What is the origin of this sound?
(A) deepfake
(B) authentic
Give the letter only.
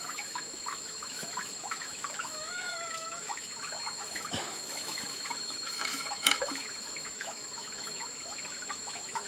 A